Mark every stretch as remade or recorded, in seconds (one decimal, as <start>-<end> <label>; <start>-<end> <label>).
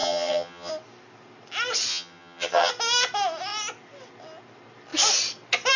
0.0-0.7 remade; 0.7-1.9 recorded; 1.9-2.7 remade; 2.7-5.8 recorded